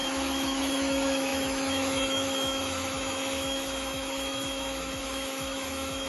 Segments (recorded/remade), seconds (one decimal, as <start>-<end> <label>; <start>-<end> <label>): 0.0-6.1 remade